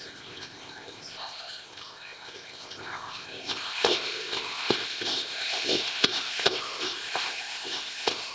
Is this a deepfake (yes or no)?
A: yes